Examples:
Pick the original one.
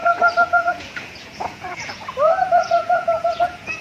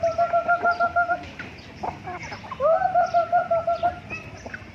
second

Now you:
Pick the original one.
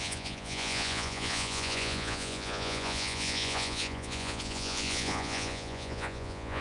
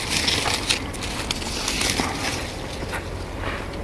second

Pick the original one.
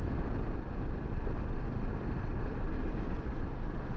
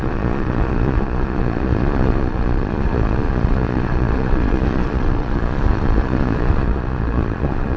first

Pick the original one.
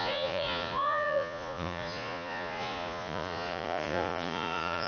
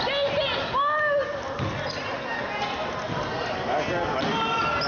second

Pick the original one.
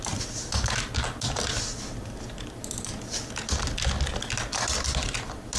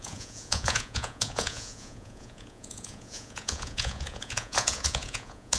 first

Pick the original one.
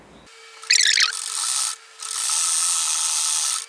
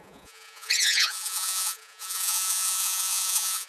first